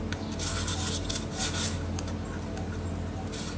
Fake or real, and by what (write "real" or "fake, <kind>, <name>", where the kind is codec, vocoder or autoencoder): real